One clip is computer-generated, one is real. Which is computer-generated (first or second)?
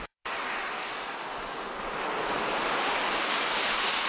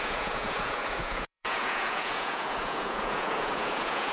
second